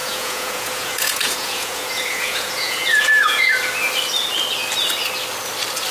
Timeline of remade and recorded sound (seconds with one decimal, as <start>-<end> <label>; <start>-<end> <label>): 0.0-3.5 remade; 3.5-5.9 recorded